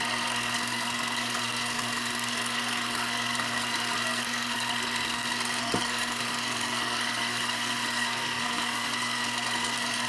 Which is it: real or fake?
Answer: fake